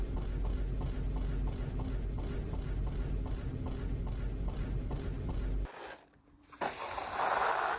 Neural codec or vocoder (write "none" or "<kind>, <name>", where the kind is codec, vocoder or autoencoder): none